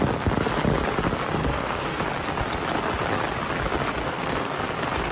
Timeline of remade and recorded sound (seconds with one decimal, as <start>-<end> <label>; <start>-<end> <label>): 0.0-1.4 recorded; 1.4-2.0 remade; 2.0-4.0 recorded; 4.0-4.6 remade; 4.6-5.1 recorded